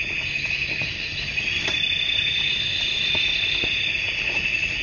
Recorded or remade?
recorded